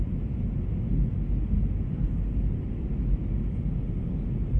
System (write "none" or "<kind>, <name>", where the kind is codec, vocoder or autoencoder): none